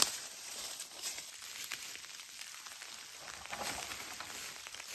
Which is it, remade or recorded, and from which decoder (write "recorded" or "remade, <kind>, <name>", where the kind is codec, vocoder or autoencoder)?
recorded